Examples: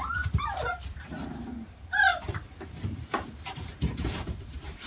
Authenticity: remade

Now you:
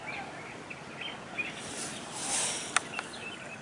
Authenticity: recorded